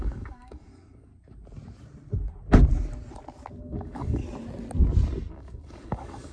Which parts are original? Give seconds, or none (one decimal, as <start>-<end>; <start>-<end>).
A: 1.1-3.6; 4.2-5.3